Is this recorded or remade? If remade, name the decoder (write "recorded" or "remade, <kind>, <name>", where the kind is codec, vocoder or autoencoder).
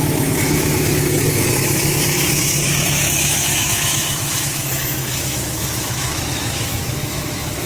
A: remade, autoencoder, DAC-VAE